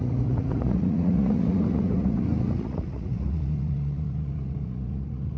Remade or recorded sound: remade